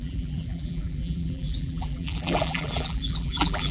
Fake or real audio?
fake